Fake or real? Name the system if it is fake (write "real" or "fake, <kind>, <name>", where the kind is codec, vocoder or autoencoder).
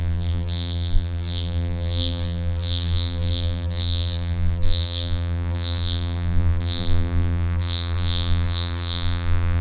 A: fake, vocoder, BigVGAN v2